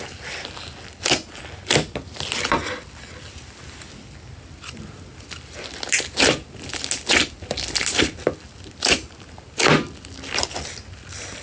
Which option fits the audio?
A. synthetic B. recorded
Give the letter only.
B